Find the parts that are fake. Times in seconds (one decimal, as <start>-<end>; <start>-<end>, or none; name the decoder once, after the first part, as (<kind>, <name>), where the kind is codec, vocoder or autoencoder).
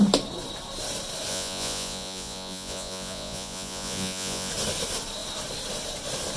1.3-4.5 (vocoder, Vocos)